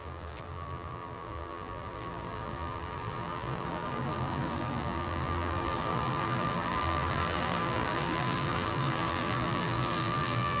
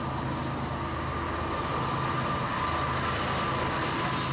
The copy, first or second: first